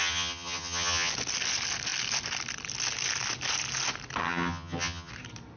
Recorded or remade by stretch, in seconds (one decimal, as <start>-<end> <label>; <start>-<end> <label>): 0.0-1.1 remade; 1.1-4.2 recorded; 4.2-5.1 remade; 5.1-5.6 recorded